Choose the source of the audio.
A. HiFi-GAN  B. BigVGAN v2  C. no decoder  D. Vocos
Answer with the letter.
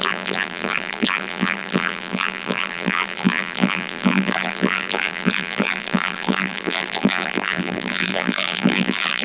B